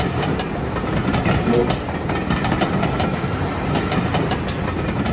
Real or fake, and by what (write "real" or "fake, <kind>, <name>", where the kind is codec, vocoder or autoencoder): real